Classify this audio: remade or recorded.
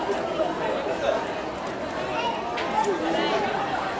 recorded